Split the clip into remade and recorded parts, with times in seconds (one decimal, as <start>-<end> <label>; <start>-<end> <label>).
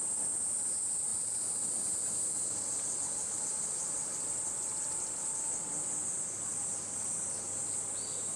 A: 0.0-8.4 remade